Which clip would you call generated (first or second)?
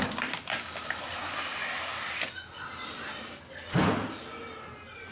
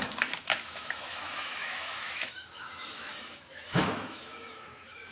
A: second